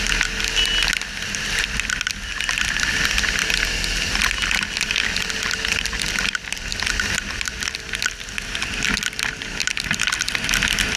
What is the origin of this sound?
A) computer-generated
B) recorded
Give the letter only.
B